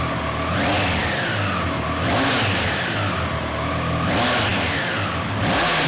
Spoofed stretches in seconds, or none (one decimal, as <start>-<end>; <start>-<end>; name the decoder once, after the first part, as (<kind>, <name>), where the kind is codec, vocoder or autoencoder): none